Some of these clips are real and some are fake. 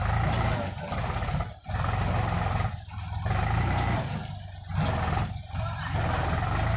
real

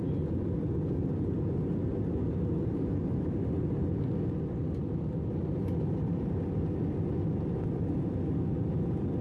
real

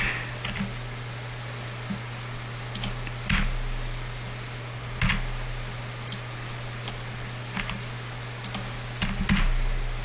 real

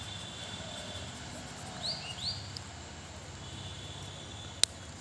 real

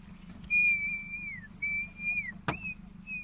real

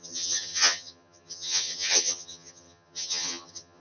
fake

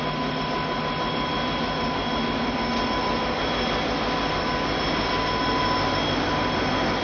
real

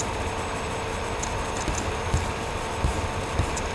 fake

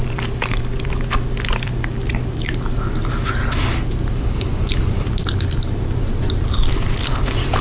fake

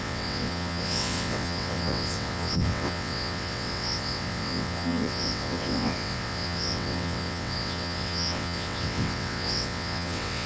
fake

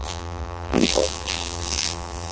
fake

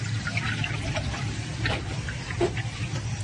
real